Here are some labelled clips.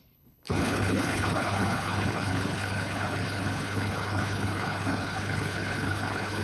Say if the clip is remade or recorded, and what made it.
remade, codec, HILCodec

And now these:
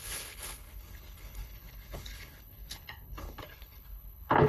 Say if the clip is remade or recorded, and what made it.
remade, codec, HILCodec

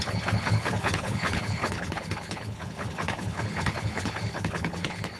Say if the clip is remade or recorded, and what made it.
remade, codec, HILCodec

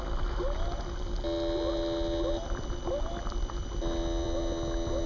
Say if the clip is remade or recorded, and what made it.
recorded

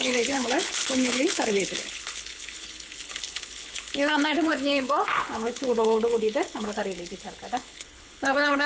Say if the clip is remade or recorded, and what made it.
remade, codec, HILCodec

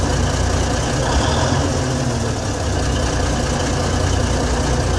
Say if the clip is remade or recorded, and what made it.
recorded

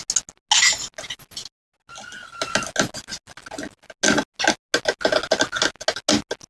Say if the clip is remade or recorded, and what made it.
recorded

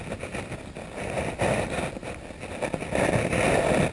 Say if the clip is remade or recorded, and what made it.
recorded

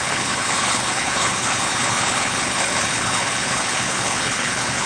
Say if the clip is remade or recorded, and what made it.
remade, codec, HILCodec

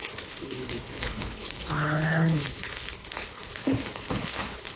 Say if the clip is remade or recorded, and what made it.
remade, codec, HILCodec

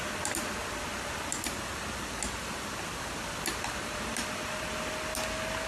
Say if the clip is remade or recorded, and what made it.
recorded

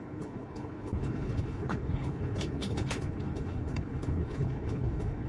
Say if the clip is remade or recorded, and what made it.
remade, codec, HILCodec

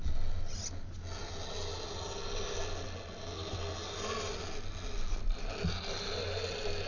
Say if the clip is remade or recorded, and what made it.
recorded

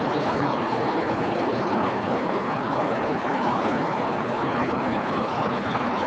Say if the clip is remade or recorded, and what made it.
remade, codec, HILCodec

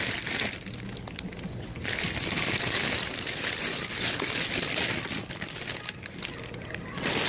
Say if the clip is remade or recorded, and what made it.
recorded